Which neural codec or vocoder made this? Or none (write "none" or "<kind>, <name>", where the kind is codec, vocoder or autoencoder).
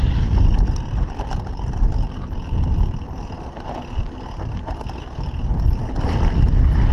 none